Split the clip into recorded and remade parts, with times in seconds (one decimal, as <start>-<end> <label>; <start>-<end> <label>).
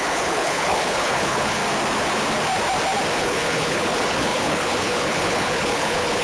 0.0-1.6 remade; 1.6-3.2 recorded; 3.2-6.2 remade